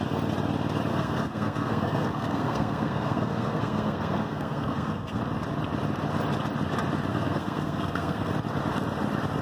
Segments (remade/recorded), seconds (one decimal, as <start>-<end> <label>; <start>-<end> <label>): 0.0-0.9 recorded; 0.9-5.2 remade; 5.2-7.1 recorded; 7.1-8.3 remade; 8.3-9.4 recorded